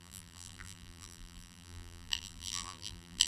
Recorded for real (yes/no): no